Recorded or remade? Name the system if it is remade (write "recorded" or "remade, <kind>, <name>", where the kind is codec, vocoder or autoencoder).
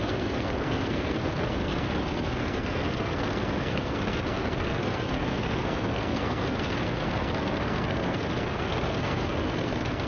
remade, codec, SNAC